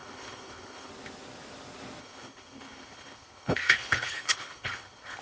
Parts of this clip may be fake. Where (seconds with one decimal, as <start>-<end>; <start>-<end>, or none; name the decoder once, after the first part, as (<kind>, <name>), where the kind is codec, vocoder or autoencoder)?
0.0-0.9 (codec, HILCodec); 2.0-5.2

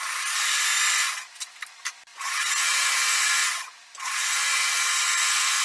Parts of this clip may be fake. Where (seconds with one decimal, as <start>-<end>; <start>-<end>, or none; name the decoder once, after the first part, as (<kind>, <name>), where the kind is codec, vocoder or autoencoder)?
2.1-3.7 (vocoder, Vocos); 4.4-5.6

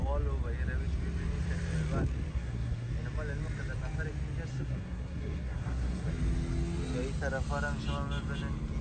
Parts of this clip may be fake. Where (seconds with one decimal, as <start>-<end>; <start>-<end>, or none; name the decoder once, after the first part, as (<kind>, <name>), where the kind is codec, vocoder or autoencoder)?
2.3-2.9 (codec, SNAC); 4.5-6.1

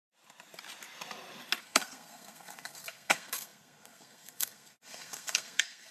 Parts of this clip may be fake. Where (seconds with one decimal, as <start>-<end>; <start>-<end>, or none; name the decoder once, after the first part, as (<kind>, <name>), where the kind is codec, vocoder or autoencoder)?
1.6-5.9 (codec, SNAC)

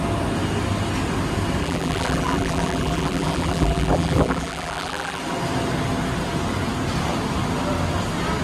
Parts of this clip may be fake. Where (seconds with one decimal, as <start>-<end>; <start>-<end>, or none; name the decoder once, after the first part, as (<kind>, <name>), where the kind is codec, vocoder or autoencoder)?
1.6-5.2 (vocoder, BigVGAN v2)